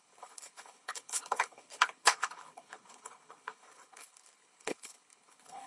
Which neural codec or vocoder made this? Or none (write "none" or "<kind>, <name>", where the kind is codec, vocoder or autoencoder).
codec, HILCodec